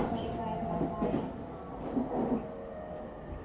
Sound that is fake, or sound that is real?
real